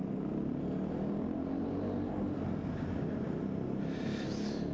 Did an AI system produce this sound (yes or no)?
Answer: no